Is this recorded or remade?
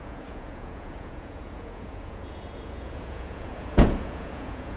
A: remade